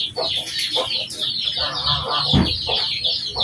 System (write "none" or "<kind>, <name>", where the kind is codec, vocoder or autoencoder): none